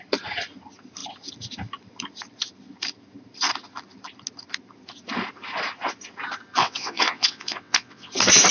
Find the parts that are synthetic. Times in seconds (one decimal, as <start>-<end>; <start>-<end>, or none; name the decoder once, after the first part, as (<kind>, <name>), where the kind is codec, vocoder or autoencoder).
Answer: 6.6-8.1 (vocoder, WaveNeXt)